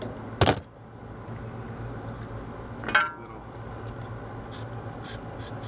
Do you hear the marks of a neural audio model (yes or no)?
no